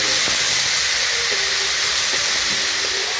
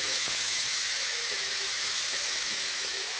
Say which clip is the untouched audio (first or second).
first